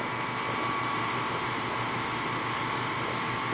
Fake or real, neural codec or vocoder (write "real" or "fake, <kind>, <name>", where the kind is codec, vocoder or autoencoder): fake, vocoder, BigVGAN v2